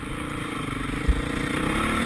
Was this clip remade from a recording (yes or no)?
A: no